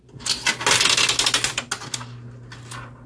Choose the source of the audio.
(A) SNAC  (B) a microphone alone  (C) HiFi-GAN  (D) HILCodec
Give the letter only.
B